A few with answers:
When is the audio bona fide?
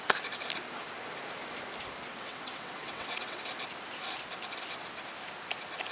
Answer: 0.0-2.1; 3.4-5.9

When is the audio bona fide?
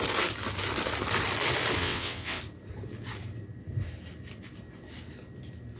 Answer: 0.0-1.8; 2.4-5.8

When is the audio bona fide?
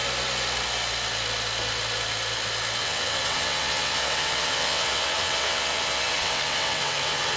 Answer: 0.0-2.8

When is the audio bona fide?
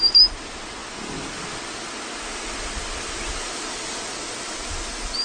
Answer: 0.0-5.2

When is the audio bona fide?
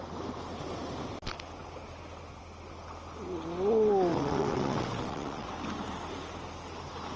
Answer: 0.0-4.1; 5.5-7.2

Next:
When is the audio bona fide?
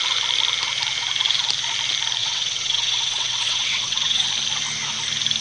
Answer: 0.0-2.2; 4.3-5.4